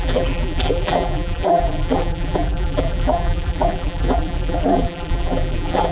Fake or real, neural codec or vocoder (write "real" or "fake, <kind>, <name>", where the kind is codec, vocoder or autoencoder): fake, vocoder, BigVGAN v2